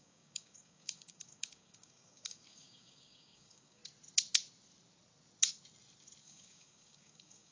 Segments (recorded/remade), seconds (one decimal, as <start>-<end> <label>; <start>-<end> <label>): 0.0-3.8 remade; 3.8-6.2 recorded; 6.2-7.5 remade